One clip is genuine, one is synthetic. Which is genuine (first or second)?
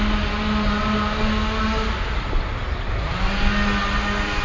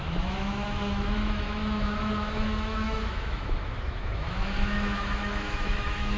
first